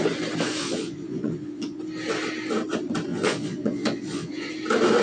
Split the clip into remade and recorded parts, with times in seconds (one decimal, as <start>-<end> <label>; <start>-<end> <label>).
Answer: 0.0-0.6 recorded; 0.6-1.8 remade; 1.8-3.1 recorded; 3.1-4.5 remade; 4.5-5.0 recorded